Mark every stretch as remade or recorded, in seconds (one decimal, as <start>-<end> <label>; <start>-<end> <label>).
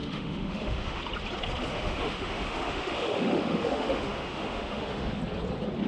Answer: 0.0-1.0 remade; 1.0-1.7 recorded; 1.7-5.2 remade; 5.2-5.9 recorded